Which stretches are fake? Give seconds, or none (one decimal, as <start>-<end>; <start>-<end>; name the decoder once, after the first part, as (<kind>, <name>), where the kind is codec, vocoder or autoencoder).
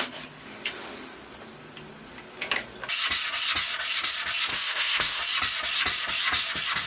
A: 4.5-5.2 (codec, SNAC)